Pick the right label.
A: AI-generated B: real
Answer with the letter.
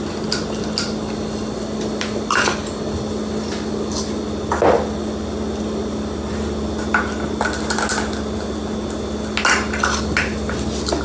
B